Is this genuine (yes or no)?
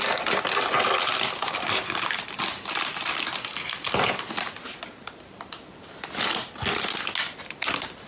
yes